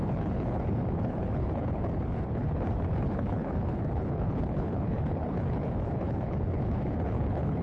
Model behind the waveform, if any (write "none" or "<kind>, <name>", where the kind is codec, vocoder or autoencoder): codec, HILCodec